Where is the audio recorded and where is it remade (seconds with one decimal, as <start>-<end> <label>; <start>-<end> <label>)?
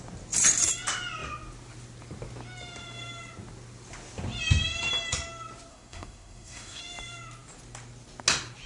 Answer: 0.0-5.7 recorded; 5.7-6.8 remade; 6.8-8.7 recorded